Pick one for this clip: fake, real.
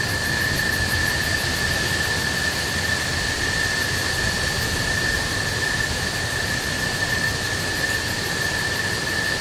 real